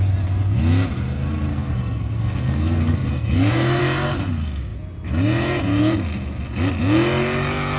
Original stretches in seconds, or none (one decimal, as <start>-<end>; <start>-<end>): 0.0-1.5; 3.8-7.8